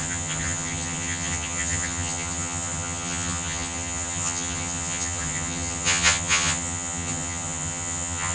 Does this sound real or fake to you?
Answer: fake